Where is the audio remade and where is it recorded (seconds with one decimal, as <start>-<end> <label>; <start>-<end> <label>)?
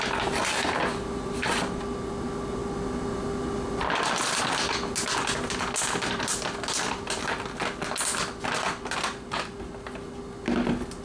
0.0-11.0 recorded